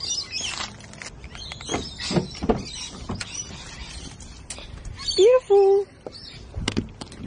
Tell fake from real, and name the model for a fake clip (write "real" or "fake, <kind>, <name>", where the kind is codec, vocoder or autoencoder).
real